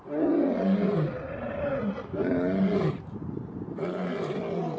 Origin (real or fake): real